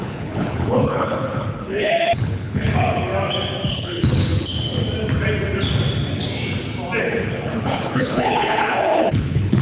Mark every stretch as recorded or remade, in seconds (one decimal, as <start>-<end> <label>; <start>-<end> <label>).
0.0-3.1 remade; 3.1-3.7 recorded; 3.7-4.5 remade; 4.5-7.0 recorded; 7.0-9.6 remade